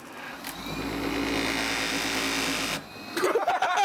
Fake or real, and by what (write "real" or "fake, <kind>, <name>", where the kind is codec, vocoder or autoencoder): real